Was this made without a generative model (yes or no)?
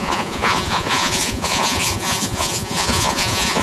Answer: no